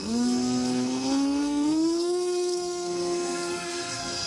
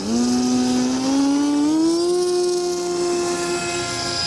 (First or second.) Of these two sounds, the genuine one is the second